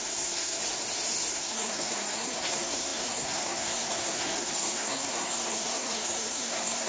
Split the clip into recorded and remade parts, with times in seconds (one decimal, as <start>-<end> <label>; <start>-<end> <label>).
0.0-0.6 remade; 0.6-1.3 recorded; 1.3-6.9 remade